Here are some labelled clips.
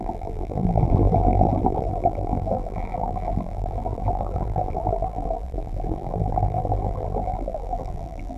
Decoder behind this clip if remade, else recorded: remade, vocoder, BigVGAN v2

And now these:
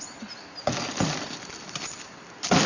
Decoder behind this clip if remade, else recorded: recorded